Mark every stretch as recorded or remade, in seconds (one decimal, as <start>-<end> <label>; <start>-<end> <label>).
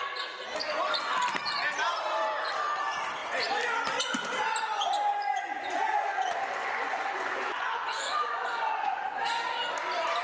0.0-4.7 recorded; 4.7-9.2 remade; 9.2-10.2 recorded